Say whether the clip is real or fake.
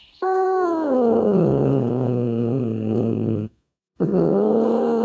fake